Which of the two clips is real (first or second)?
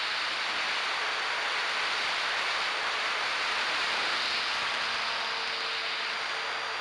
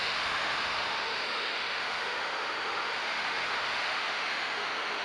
first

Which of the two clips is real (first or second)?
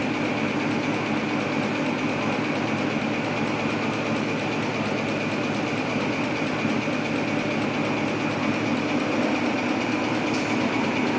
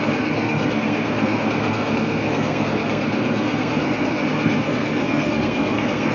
first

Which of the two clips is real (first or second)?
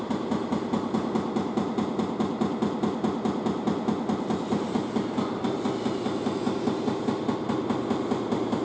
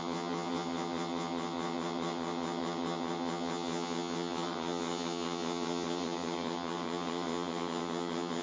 first